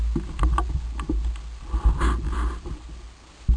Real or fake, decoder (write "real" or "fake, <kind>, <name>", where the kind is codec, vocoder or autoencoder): real